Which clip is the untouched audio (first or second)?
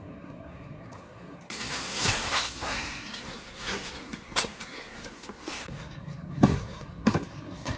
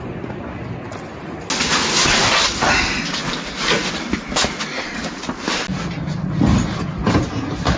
second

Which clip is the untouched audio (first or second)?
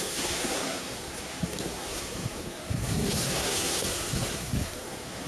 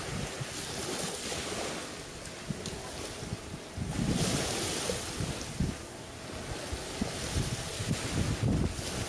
second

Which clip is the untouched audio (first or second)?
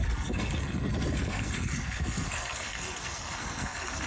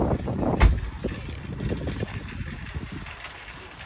second